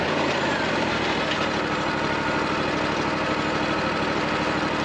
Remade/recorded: recorded